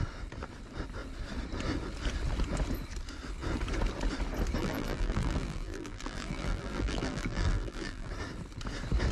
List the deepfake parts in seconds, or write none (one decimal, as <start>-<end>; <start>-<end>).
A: 4.6-8.1